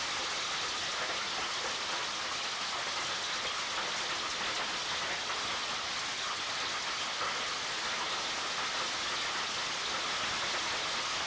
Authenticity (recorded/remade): recorded